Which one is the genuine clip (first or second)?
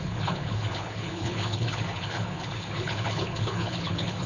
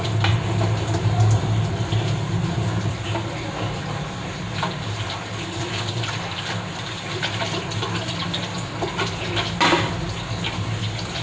second